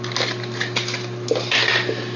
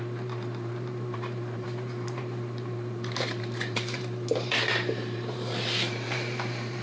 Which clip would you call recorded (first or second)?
first